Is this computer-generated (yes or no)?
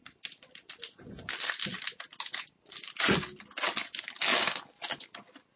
no